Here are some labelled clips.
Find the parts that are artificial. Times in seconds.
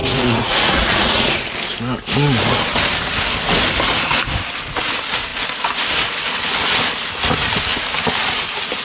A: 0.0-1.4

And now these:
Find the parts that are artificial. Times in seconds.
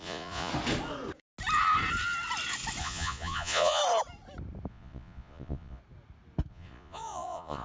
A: 0.0-0.5; 2.8-3.8; 4.7-5.8; 6.5-7.6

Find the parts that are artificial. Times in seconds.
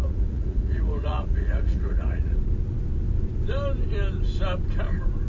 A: 0.0-2.4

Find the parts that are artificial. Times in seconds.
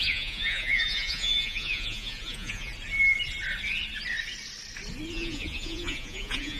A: 0.0-2.7; 5.1-6.6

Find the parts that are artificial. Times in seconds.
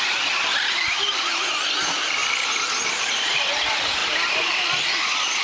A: none